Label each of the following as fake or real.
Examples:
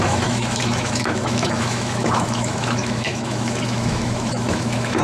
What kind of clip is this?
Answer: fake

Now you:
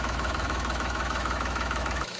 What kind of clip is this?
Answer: fake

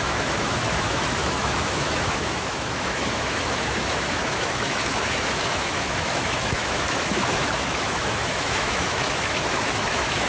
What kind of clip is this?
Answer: fake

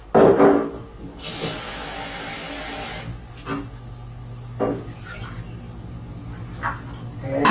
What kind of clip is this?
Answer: real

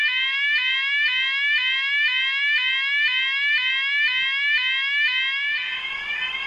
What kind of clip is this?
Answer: real